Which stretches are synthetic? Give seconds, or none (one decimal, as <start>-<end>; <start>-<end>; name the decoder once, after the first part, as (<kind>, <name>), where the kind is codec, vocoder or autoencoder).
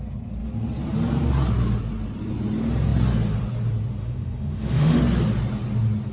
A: 4.0-5.0 (autoencoder, DAC-VAE)